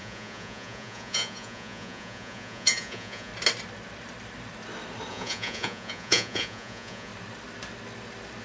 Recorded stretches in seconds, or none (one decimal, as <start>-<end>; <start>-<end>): 3.3-5.1; 7.1-8.4